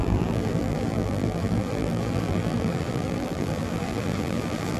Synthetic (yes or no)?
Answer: yes